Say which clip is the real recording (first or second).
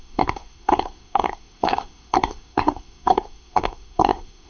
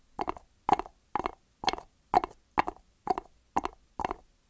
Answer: second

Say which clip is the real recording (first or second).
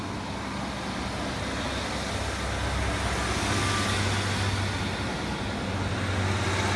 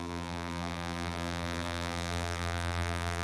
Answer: first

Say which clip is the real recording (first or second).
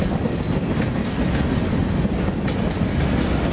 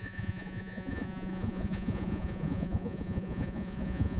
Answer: first